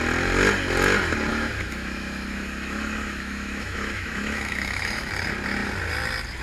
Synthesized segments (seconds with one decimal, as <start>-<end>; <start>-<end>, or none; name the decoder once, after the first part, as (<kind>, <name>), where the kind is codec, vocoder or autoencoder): 1.3-5.1 (autoencoder, DAC-VAE)